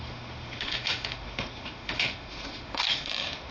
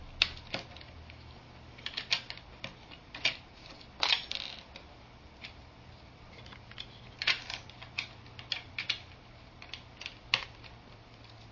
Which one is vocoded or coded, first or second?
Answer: first